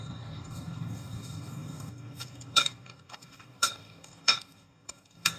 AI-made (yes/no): yes